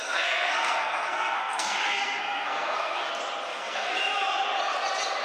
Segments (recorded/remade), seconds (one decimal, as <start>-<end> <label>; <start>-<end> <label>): 0.0-3.1 remade; 3.1-3.5 recorded; 3.5-4.0 remade; 4.0-5.2 recorded